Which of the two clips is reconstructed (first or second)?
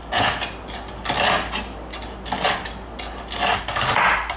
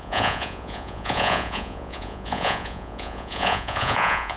second